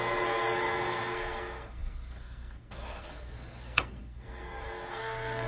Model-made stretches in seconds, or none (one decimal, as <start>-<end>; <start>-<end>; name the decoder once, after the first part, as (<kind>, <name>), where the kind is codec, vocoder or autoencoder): 0.0-5.5 (codec, SNAC)